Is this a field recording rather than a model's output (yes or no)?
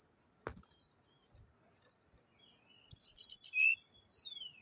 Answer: yes